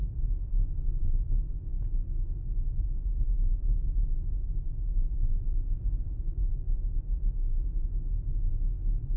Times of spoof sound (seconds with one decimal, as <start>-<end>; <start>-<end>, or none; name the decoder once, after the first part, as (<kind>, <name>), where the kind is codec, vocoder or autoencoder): 0.0-1.7 (vocoder, BigVGAN v2); 2.7-7.7